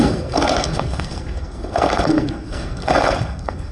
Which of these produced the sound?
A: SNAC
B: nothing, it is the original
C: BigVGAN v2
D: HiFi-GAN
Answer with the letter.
A